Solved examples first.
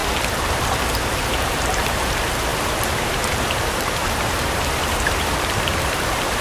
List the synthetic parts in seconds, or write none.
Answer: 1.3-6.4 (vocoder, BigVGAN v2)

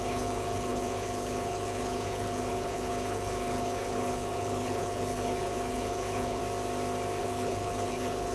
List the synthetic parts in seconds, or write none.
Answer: 0.0-6.4 (codec, HILCodec); 7.2-8.3

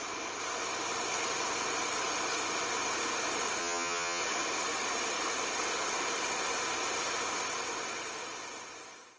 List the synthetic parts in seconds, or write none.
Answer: 3.6-4.2 (vocoder, HiFi-GAN)

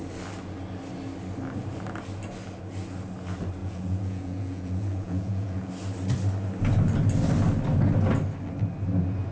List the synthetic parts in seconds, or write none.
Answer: 3.6-5.7 (vocoder, Vocos)